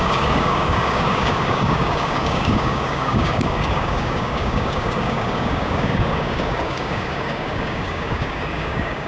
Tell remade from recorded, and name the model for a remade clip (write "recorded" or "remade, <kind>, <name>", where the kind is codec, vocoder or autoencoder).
remade, codec, DAC